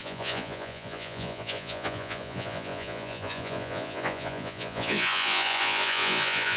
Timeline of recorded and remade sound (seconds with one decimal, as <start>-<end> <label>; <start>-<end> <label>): 0.0-6.6 remade